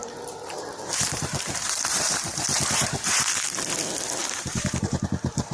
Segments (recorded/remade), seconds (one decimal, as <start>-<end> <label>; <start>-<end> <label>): 0.0-3.3 remade; 3.3-4.2 recorded; 4.2-5.5 remade